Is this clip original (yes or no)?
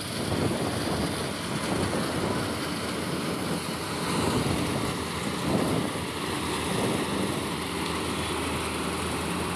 yes